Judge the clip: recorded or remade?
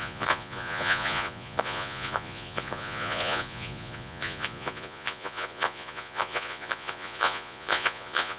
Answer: remade